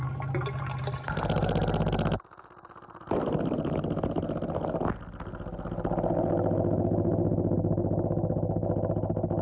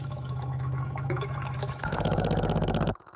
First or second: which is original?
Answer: first